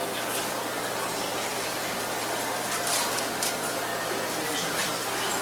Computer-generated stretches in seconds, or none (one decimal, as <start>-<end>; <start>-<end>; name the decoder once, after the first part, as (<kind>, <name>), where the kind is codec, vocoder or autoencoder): 1.5-3.2 (vocoder, BigVGAN v2)